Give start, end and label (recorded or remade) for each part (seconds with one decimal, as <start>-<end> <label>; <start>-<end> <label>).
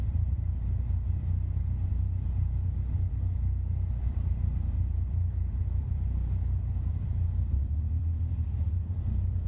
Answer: 0.0-3.7 recorded; 3.7-9.0 remade; 9.0-9.5 recorded